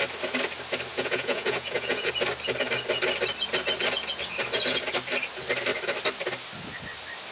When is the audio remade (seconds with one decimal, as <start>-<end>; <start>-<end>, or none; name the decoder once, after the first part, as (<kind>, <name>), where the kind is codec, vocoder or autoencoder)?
0.9-2.1 (vocoder, Vocos)